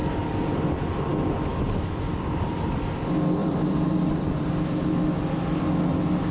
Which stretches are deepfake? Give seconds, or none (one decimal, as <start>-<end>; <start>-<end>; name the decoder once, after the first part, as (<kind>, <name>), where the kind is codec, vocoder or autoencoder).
0.0-1.1 (vocoder, BigVGAN v2); 1.5-2.9; 3.4-5.6